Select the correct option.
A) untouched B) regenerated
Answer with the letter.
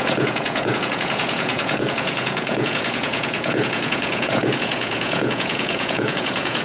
B